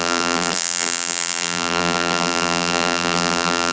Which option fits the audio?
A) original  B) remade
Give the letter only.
B